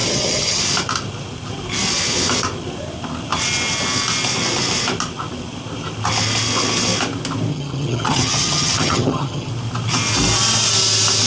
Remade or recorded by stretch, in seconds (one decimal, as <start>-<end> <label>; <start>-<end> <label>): 0.0-0.6 remade; 0.6-7.5 recorded; 7.5-9.5 remade; 9.5-11.3 recorded